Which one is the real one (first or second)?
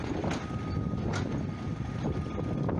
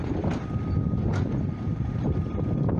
first